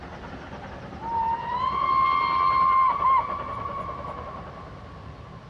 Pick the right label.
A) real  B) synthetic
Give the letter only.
A